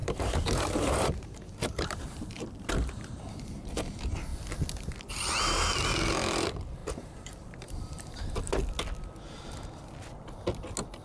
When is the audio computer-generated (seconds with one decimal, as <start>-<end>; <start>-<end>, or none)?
0.0-3.7; 6.8-8.5